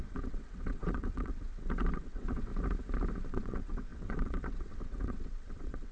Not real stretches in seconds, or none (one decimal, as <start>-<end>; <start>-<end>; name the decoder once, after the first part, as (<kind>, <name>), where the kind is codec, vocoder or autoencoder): 0.0-2.5 (vocoder, WaveNeXt); 3.3-5.9